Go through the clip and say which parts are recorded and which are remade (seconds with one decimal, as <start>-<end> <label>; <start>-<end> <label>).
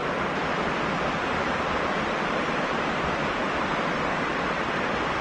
0.0-5.2 recorded